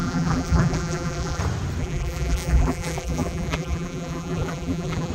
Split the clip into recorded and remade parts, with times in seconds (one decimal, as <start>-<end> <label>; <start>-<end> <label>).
0.0-1.4 remade; 1.4-1.8 recorded; 1.8-5.1 remade